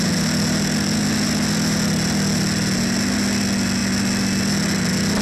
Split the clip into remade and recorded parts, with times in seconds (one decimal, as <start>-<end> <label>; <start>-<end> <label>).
0.0-5.2 recorded